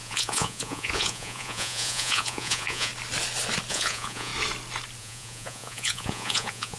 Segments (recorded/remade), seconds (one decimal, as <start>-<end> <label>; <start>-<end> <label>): 0.0-2.9 remade; 2.9-3.7 recorded; 3.7-4.3 remade; 4.3-5.0 recorded; 5.0-6.8 remade